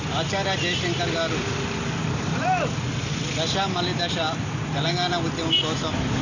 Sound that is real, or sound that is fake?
real